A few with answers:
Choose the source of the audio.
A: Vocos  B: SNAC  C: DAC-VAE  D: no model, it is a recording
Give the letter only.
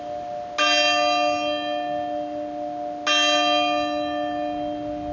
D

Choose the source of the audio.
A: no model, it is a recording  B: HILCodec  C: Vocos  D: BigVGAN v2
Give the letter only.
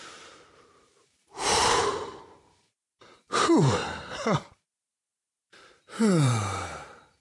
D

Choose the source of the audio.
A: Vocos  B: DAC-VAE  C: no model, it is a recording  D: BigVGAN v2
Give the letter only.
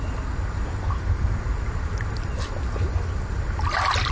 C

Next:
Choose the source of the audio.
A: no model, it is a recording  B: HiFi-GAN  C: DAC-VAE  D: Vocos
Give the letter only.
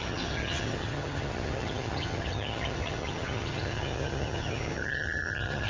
B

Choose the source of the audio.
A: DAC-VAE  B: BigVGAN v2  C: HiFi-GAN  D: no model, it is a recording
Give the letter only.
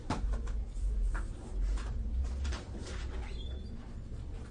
B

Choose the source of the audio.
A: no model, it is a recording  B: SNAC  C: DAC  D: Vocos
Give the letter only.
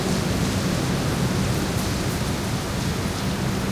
A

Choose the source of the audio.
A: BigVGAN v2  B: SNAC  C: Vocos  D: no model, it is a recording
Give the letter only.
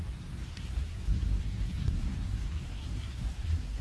B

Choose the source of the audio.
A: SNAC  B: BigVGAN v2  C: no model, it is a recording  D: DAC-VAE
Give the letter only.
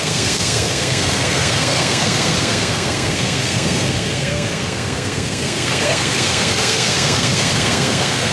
A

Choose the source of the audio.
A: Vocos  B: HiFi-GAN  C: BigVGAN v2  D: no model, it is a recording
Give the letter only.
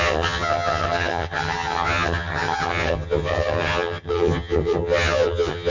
B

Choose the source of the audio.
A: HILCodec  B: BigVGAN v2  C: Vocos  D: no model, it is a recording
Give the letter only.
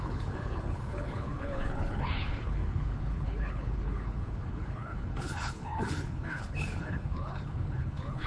A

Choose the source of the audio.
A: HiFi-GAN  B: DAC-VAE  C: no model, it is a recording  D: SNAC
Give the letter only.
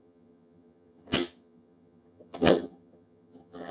A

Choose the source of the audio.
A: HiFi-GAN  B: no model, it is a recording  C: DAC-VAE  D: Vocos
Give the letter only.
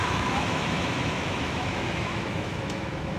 C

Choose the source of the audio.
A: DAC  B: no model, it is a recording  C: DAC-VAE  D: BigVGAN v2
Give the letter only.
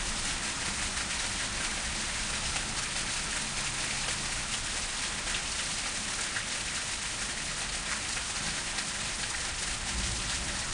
B